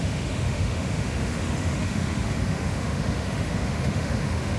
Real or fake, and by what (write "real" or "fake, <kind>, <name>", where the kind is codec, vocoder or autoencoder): fake, autoencoder, DAC-VAE